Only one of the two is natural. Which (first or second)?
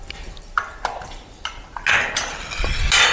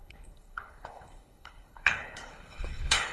first